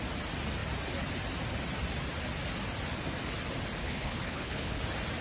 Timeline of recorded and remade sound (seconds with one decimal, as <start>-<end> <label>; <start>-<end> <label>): 0.0-3.8 recorded; 3.8-4.8 remade; 4.8-5.2 recorded